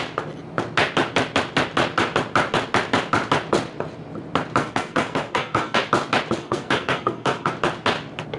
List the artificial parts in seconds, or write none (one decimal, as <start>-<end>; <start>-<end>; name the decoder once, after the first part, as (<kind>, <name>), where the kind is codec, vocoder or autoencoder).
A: 4.6-5.8 (codec, SNAC); 6.4-7.5